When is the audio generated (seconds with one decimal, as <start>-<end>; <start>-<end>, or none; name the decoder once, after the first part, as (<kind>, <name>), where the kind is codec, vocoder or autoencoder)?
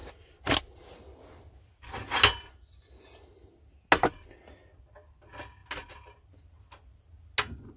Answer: none